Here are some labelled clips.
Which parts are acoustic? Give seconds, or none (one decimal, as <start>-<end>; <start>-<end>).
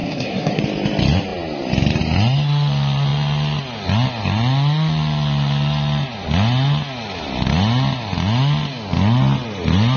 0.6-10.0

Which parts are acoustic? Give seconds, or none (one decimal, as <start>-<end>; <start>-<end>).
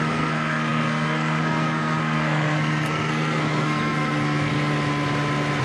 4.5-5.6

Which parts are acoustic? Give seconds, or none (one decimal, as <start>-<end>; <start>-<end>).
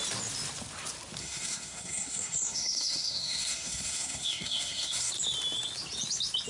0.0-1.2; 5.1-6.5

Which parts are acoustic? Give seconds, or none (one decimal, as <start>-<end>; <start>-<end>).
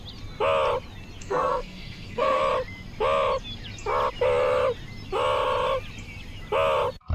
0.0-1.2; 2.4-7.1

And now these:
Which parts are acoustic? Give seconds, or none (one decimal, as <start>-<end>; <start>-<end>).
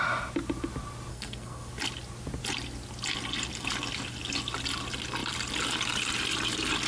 0.0-1.1; 1.7-6.9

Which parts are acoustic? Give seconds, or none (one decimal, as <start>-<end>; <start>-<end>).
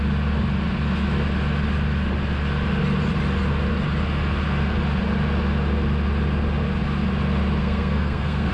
0.0-7.6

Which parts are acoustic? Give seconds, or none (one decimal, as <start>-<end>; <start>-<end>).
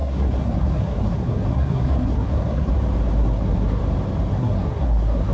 2.7-3.2; 3.8-4.3